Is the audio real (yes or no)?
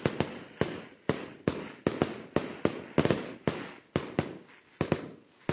yes